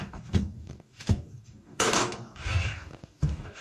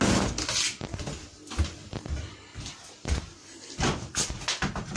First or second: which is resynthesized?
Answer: first